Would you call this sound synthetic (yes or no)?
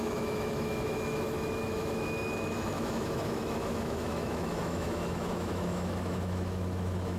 yes